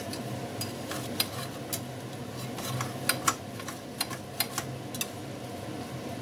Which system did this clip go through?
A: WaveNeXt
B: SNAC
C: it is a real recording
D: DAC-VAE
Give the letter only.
C